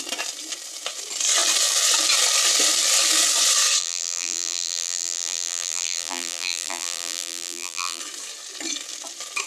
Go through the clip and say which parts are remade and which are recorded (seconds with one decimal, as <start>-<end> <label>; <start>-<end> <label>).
0.0-3.8 recorded; 3.8-8.0 remade; 8.0-9.5 recorded